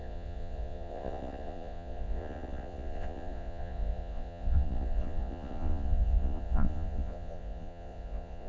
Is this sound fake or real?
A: fake